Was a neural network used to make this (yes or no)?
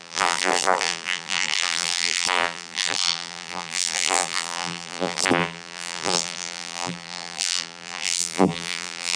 yes